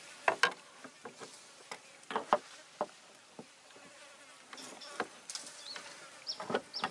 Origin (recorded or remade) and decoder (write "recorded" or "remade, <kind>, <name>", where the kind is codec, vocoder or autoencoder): recorded